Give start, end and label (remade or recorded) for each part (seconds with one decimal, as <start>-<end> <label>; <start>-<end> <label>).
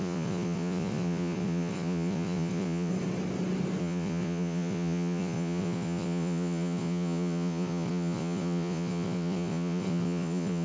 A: 0.0-2.9 remade; 2.9-3.8 recorded; 3.8-10.6 remade